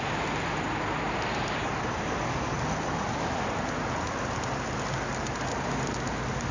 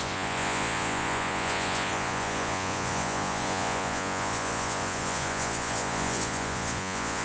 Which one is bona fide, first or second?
first